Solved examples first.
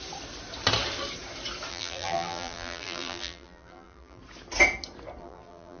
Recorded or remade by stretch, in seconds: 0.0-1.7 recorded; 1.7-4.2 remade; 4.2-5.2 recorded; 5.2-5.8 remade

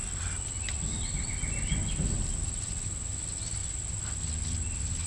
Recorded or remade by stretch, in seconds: 0.0-5.1 recorded

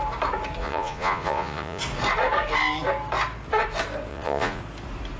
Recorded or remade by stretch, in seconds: 0.0-0.6 recorded; 0.6-1.8 remade; 1.8-4.1 recorded; 4.1-4.6 remade; 4.6-5.2 recorded

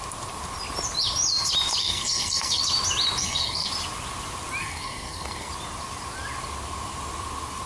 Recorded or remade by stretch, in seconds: 0.0-1.8 recorded; 1.8-2.6 remade; 2.6-3.2 recorded; 3.2-3.7 remade; 3.7-4.6 recorded; 4.6-5.5 remade; 5.5-7.7 recorded

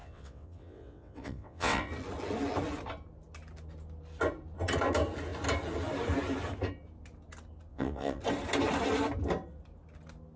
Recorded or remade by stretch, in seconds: 0.0-1.9 remade; 1.9-7.7 recorded; 7.7-8.2 remade; 8.2-10.4 recorded

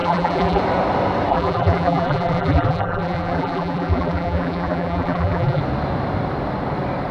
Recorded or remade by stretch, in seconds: 0.0-0.6 remade; 0.6-1.3 recorded; 1.3-5.6 remade; 5.6-7.1 recorded